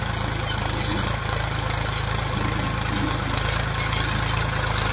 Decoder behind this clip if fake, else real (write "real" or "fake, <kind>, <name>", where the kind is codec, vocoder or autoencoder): real